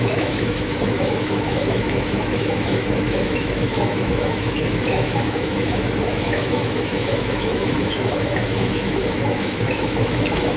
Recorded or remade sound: remade